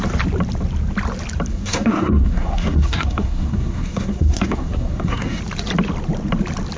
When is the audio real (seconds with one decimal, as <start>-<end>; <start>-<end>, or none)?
0.0-1.5; 5.4-6.8